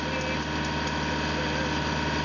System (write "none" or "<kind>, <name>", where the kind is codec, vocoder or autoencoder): none